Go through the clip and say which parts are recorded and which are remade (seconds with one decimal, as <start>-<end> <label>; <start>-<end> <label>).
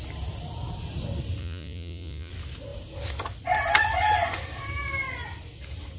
0.0-1.4 recorded; 1.4-2.3 remade; 2.3-6.0 recorded